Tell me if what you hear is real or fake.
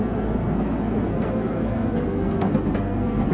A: fake